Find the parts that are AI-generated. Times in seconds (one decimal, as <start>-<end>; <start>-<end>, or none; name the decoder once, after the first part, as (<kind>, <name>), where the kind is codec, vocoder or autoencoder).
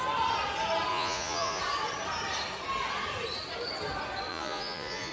0.9-1.6 (vocoder, Vocos); 4.3-5.1